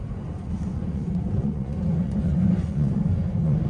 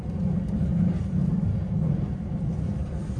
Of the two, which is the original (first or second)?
second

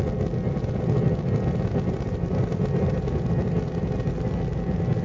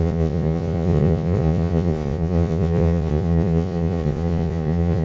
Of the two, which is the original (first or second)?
first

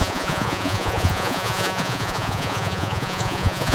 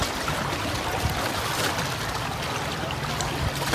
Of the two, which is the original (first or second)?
second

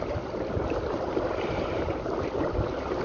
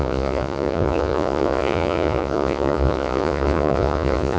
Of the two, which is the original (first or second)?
first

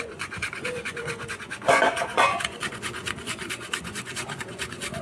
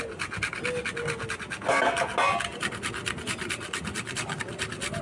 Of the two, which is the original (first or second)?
second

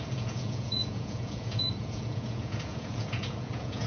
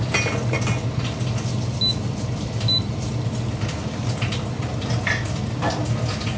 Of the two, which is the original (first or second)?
second